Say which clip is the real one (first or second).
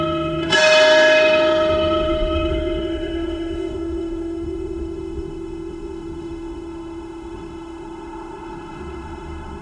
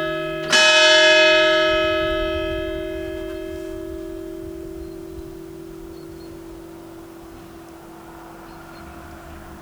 second